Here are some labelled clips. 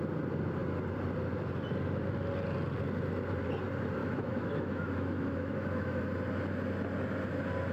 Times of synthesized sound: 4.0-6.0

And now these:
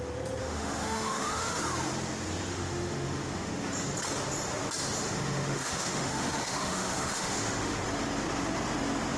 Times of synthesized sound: 0.4-1.6; 2.5-3.5; 5.0-7.8

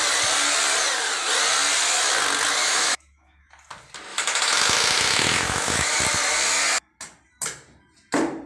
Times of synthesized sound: 2.6-3.5; 4.1-6.0

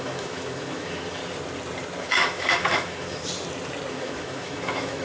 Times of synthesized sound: 0.0-1.2; 2.0-3.2; 3.9-5.0

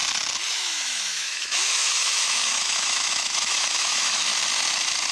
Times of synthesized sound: 0.5-4.3

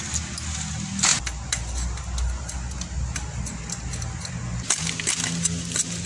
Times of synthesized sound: none